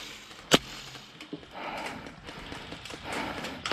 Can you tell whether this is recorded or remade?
recorded